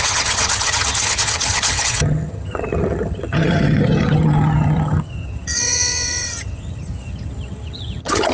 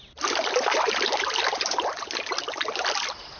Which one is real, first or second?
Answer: second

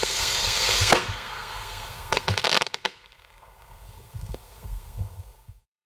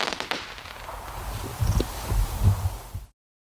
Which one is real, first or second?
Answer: second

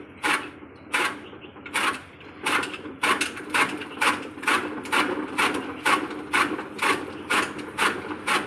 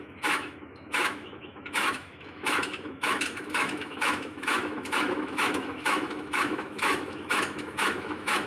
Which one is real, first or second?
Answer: first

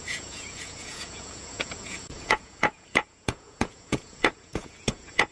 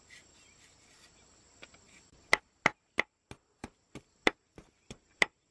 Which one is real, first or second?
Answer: second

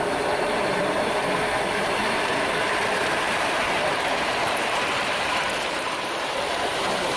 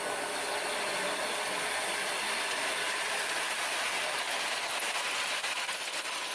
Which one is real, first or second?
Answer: second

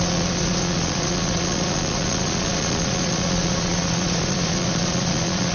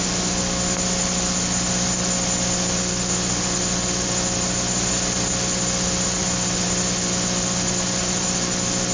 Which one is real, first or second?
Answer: second